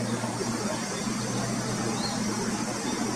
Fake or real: real